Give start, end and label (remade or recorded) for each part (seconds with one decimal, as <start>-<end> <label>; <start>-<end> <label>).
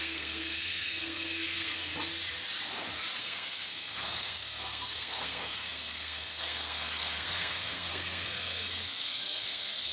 0.0-1.9 remade; 1.9-3.2 recorded; 3.2-9.9 remade